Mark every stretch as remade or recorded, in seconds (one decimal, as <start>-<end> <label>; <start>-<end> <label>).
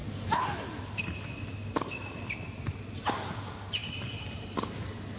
0.0-5.2 recorded